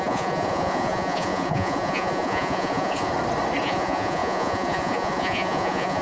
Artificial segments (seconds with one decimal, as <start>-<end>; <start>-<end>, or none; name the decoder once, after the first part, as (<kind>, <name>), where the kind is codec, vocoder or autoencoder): 0.0-3.1 (vocoder, Vocos); 3.6-6.0